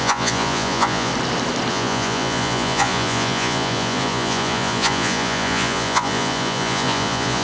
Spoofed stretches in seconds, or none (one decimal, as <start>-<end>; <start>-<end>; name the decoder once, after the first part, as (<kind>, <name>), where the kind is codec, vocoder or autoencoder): 0.0-1.1 (vocoder, Vocos); 1.7-7.4